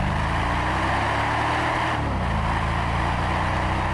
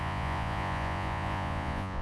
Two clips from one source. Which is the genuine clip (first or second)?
first